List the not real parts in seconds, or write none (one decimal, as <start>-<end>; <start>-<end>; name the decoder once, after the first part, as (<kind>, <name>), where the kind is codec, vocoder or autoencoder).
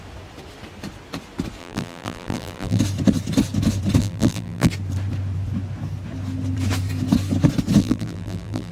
1.6-2.8 (vocoder, BigVGAN v2); 4.0-4.7; 7.8-8.7